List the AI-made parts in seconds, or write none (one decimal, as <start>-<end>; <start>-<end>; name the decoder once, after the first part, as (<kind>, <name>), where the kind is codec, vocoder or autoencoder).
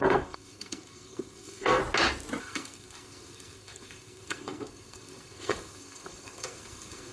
0.0-1.8 (codec, SNAC); 2.4-7.1